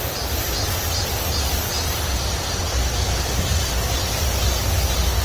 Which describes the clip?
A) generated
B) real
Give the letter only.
B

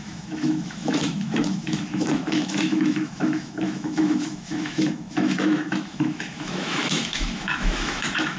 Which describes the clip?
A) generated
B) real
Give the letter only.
A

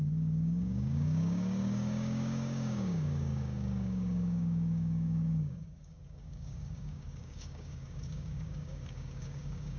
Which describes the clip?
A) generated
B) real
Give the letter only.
A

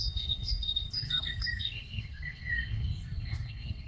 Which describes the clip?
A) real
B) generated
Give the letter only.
B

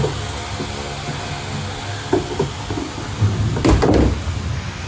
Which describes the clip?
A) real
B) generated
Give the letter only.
A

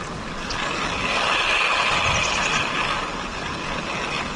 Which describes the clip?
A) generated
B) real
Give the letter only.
B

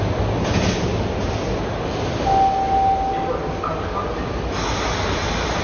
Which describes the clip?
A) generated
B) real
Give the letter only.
B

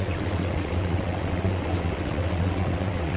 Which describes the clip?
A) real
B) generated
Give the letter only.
B